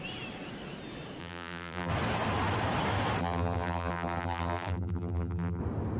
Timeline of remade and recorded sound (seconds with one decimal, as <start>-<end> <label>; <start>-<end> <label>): 0.0-1.2 recorded; 1.2-1.9 remade; 1.9-3.2 recorded; 3.2-5.6 remade; 5.6-6.0 recorded